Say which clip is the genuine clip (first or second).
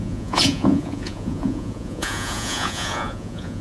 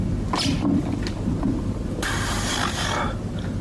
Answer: second